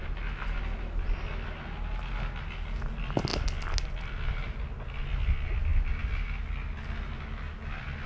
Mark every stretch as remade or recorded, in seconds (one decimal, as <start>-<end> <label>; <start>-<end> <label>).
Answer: 0.0-8.1 recorded